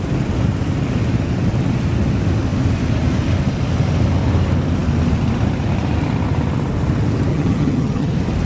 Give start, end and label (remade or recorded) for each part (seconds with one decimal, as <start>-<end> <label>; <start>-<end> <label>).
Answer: 0.0-7.3 recorded; 7.3-8.1 remade; 8.1-8.5 recorded